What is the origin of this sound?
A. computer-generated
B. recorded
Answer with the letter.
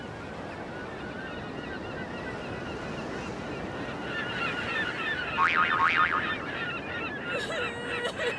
B